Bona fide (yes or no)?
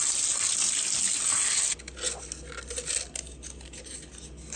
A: yes